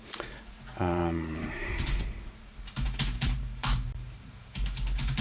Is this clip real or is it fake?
fake